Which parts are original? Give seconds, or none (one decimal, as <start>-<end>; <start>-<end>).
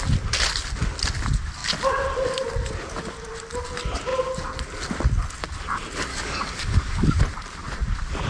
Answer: 0.0-6.1; 7.2-8.3